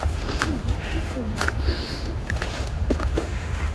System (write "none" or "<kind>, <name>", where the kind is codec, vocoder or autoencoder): autoencoder, DAC-VAE